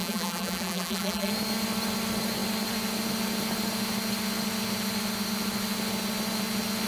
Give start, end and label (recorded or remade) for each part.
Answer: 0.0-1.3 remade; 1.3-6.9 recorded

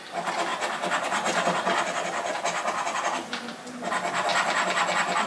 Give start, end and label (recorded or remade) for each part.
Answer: 0.0-5.3 recorded

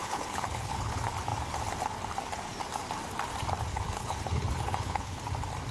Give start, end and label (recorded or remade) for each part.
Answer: 0.0-0.9 remade; 0.9-3.7 recorded; 3.7-5.2 remade; 5.2-5.7 recorded